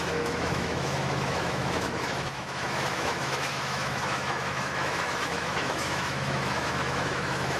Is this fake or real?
fake